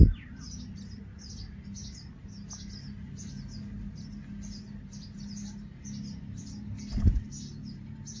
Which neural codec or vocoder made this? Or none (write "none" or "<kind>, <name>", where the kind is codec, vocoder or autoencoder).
none